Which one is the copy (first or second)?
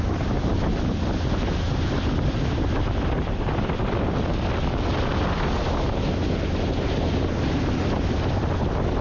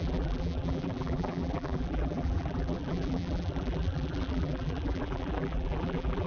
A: second